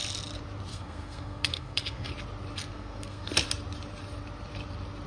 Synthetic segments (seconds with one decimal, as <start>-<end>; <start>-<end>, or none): 0.7-2.1; 2.6-3.3